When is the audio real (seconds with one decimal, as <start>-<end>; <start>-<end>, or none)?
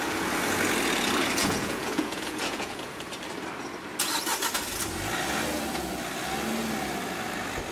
0.0-1.4; 3.0-7.7